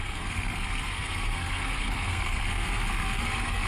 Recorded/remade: remade